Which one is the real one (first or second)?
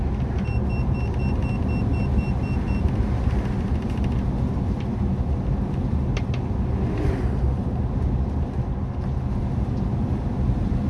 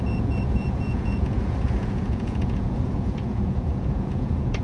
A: first